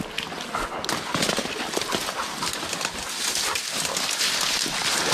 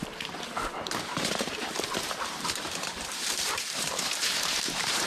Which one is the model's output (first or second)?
second